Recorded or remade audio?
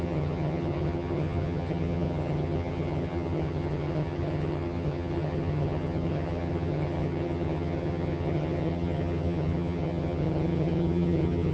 remade